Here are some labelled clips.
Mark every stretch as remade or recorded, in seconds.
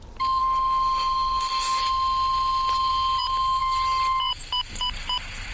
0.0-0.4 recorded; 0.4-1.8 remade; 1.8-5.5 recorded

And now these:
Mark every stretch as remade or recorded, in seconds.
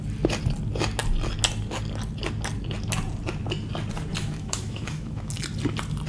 0.0-4.2 recorded; 4.2-5.3 remade; 5.3-6.1 recorded